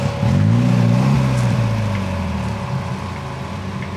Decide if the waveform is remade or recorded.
recorded